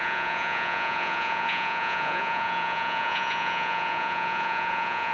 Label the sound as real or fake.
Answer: fake